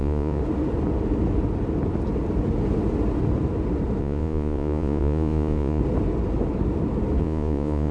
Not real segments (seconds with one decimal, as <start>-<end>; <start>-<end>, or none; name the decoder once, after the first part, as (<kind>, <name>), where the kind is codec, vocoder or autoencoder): 0.0-0.4 (vocoder, Vocos); 4.0-5.8; 7.2-7.9